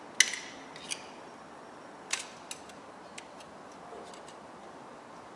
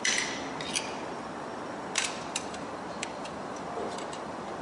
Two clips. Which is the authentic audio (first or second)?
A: first